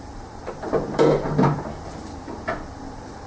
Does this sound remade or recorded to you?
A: remade